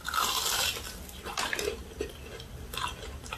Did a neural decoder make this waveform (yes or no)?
no